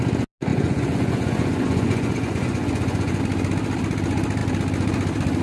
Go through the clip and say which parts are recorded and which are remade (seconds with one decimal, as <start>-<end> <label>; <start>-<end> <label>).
0.0-0.5 recorded; 0.5-3.2 remade; 3.2-5.4 recorded